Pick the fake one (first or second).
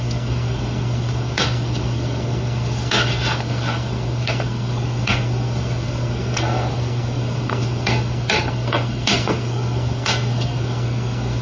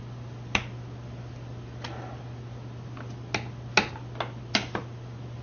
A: first